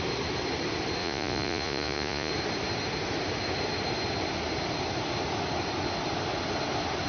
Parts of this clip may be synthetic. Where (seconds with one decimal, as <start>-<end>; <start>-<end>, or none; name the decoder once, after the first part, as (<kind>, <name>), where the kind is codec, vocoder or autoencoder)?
1.0-2.3 (vocoder, Vocos)